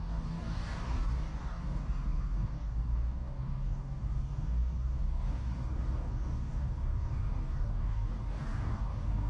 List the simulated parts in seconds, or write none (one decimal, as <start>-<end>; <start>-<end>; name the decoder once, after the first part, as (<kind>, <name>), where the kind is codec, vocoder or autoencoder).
0.0-9.3 (codec, DAC)